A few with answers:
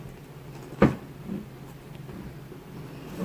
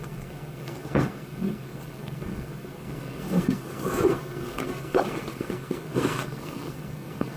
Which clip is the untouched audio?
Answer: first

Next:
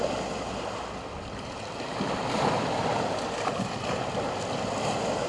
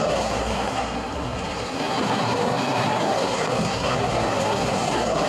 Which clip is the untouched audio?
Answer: first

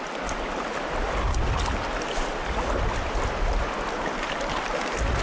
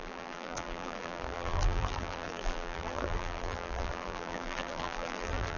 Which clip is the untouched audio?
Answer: first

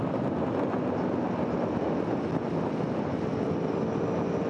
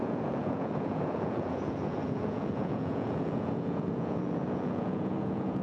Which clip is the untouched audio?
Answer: first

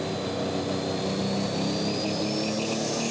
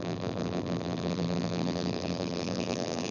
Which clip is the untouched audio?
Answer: first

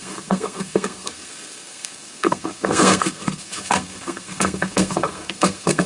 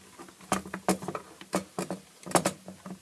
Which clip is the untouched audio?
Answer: second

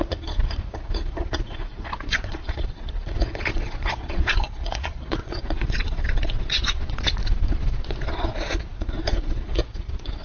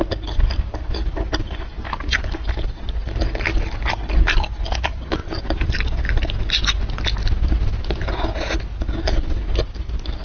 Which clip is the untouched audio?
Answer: second